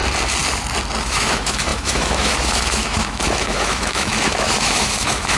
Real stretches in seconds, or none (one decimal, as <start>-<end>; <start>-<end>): 0.0-1.0